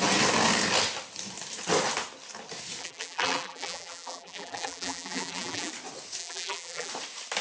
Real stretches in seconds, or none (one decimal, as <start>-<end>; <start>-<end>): 0.0-2.8; 5.7-6.2; 6.9-7.4